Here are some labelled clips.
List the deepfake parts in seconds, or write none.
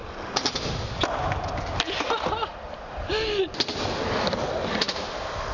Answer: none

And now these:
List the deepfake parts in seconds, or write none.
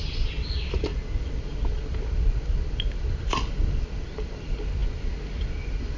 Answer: none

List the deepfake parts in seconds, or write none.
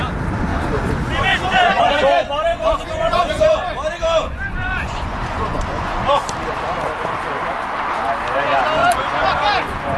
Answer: 0.5-1.9 (vocoder, Vocos); 2.5-3.7; 4.2-6.2; 8.8-10.0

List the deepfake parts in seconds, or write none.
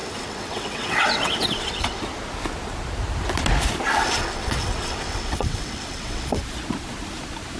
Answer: 0.0-2.0 (vocoder, WaveNeXt); 4.0-6.4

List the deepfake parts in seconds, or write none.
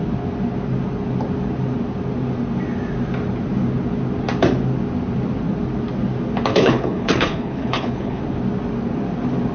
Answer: 6.5-8.2 (codec, HILCodec)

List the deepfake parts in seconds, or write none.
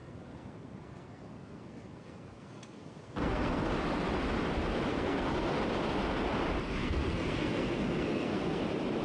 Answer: 0.0-3.7 (codec, SNAC); 4.9-5.6; 6.8-8.6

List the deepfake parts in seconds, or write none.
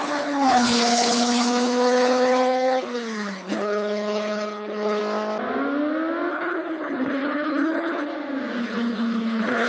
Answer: 0.0-5.0 (codec, HILCodec); 6.3-8.1; 8.6-9.7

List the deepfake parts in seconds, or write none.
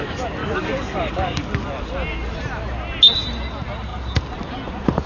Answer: 0.4-1.5 (codec, DAC)